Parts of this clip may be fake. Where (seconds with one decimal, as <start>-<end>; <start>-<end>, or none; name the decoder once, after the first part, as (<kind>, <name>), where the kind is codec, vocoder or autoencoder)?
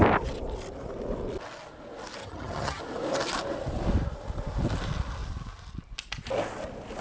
2.2-2.8 (vocoder, HiFi-GAN)